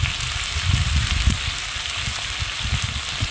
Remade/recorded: recorded